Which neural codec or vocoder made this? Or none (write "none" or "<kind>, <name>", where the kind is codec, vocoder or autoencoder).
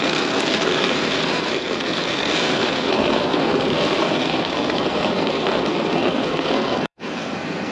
codec, SNAC